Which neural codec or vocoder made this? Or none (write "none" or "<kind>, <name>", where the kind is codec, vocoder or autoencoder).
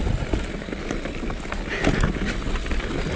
none